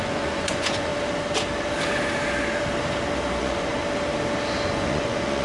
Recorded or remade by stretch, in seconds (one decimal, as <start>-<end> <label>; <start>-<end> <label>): 0.0-0.9 remade; 0.9-3.4 recorded; 3.4-3.8 remade; 3.8-4.7 recorded; 4.7-5.4 remade